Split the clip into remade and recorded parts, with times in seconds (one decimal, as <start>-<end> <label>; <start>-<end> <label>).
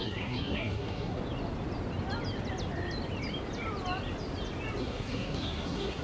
0.0-1.2 remade; 1.2-4.8 recorded; 4.8-6.0 remade